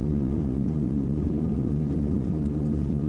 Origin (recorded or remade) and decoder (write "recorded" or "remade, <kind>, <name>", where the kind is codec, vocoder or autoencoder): remade, vocoder, Vocos